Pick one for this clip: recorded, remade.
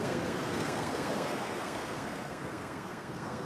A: remade